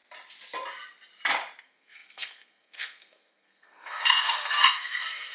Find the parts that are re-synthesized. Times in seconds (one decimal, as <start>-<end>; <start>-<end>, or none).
1.6-5.3